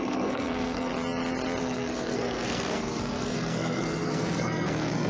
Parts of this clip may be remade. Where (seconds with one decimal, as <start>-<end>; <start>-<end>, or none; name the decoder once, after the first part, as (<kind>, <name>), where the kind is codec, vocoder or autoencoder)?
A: 0.0-0.9 (codec, SNAC); 1.6-5.1